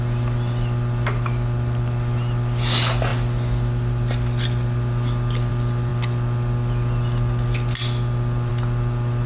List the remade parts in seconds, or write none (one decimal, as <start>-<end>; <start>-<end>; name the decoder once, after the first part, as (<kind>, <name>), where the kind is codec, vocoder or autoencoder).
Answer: none